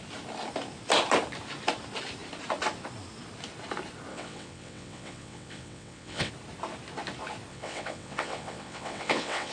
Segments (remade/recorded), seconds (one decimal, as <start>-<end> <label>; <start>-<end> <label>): 0.0-4.1 recorded; 4.1-6.3 remade; 6.3-7.5 recorded; 7.5-9.5 remade

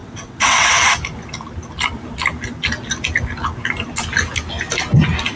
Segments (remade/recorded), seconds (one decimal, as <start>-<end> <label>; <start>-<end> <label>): 0.0-0.7 remade; 0.7-5.4 recorded